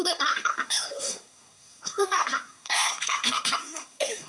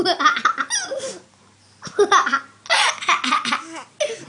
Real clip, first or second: second